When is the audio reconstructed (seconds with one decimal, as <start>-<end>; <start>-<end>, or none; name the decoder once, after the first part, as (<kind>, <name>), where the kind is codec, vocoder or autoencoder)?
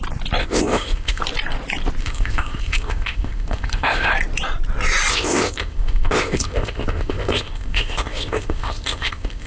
0.4-1.2 (codec, ZipCodec); 2.0-4.1; 5.1-9.5